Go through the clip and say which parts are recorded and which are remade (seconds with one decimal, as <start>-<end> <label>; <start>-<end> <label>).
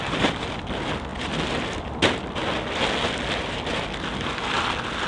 0.0-5.1 recorded